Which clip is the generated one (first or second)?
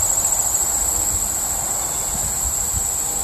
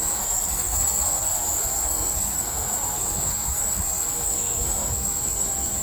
second